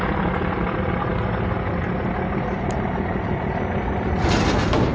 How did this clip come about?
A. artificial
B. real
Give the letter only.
B